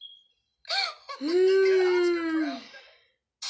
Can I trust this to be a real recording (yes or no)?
yes